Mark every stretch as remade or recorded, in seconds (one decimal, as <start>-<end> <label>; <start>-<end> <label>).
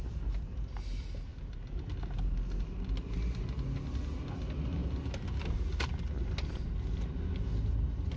0.0-8.2 recorded